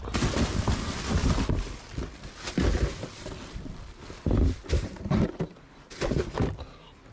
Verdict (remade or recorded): recorded